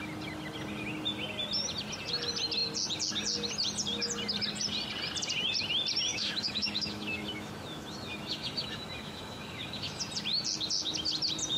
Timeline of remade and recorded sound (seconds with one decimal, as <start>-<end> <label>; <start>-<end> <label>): 0.0-6.1 recorded; 6.1-10.0 remade; 10.0-11.6 recorded